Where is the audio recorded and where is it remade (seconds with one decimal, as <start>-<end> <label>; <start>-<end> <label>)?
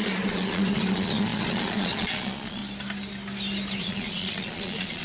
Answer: 0.0-2.6 remade; 2.6-3.8 recorded; 3.8-5.0 remade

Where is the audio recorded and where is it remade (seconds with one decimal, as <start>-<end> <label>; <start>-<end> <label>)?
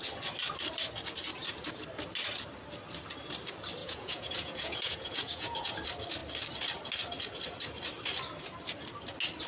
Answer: 0.0-3.8 recorded; 3.8-5.7 remade; 5.7-9.5 recorded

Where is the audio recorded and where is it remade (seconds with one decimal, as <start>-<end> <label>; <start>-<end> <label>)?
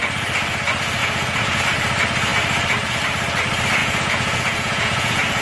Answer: 0.0-1.0 recorded; 1.0-1.6 remade; 1.6-3.8 recorded; 3.8-5.4 remade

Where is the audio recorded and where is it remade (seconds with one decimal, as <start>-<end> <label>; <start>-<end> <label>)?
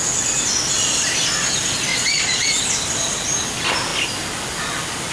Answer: 0.0-1.9 recorded; 1.9-2.6 remade; 2.6-5.1 recorded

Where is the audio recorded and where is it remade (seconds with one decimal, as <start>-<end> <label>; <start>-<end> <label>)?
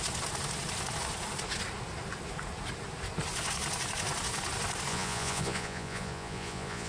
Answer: 0.0-4.9 recorded; 4.9-6.9 remade